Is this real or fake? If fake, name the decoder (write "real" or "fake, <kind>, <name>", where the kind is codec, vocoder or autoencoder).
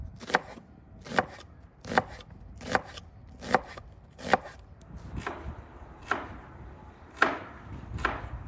real